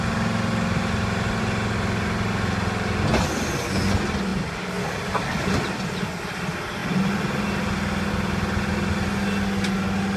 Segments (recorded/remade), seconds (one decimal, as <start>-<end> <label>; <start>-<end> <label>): 0.0-10.2 recorded